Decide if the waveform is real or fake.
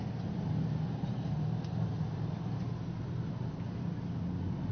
real